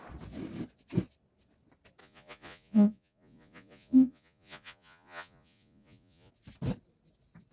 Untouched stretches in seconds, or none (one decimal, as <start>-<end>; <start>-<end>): 0.0-2.0; 6.3-7.5